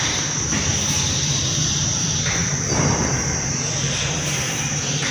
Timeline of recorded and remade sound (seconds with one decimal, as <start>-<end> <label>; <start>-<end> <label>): 0.0-0.7 remade; 0.7-1.4 recorded; 1.4-5.1 remade